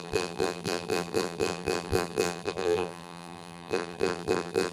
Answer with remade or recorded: remade